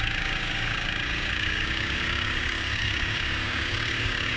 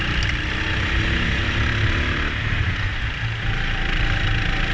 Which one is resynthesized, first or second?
first